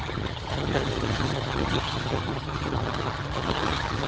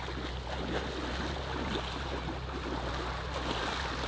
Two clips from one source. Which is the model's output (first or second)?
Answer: first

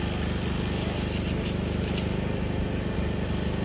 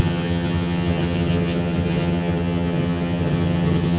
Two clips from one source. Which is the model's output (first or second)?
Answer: second